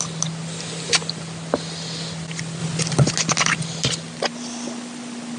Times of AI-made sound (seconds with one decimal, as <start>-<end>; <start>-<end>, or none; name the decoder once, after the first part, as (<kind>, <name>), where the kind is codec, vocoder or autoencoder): none